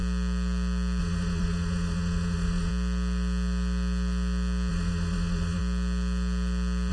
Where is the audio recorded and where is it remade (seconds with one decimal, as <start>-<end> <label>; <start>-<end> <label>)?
0.0-1.0 recorded; 1.0-2.7 remade; 2.7-4.7 recorded; 4.7-5.6 remade; 5.6-6.9 recorded